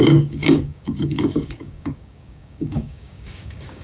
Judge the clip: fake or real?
fake